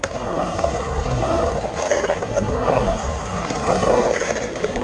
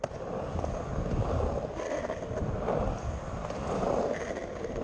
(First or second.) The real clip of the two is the second